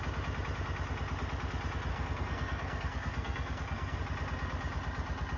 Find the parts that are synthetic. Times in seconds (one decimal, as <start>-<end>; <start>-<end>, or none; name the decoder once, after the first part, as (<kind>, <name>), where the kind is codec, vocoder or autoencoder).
1.9-4.0 (codec, SNAC)